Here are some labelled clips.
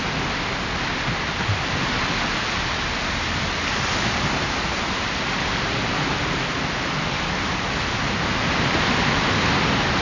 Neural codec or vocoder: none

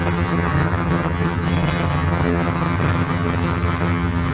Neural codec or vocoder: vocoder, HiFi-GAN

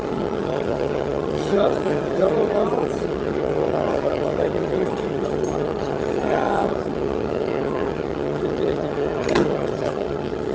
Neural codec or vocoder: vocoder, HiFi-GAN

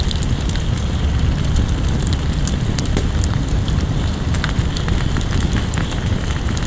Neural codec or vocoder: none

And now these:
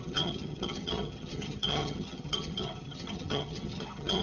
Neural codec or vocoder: vocoder, HiFi-GAN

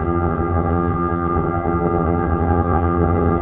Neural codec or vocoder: vocoder, HiFi-GAN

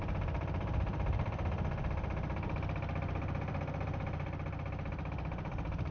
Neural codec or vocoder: none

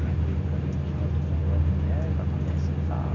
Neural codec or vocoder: none